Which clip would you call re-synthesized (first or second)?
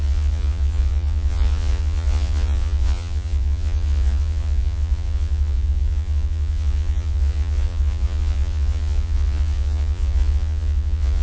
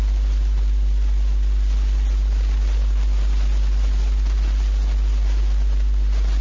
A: first